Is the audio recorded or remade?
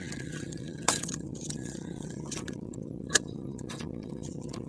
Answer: remade